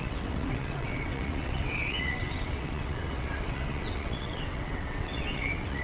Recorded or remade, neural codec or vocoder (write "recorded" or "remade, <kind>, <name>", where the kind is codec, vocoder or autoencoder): remade, vocoder, WaveNeXt